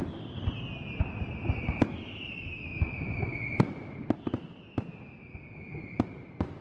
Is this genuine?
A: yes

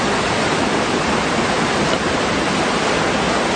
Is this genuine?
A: yes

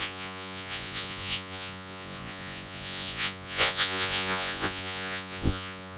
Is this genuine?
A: no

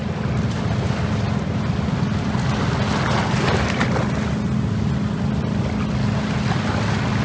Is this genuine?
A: yes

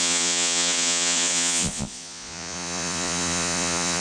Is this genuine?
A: no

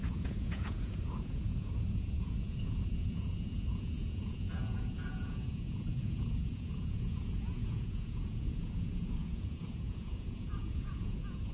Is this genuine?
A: no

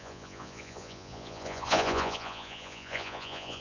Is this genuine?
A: no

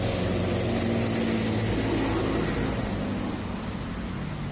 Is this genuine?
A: yes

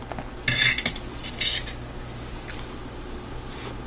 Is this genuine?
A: yes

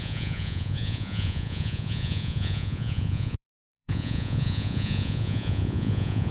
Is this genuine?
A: no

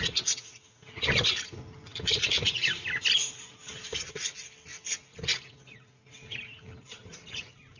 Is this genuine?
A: yes